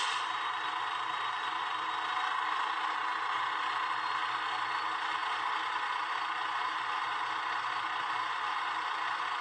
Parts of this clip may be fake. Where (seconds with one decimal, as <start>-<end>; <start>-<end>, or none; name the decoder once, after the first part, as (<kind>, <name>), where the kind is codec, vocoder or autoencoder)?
none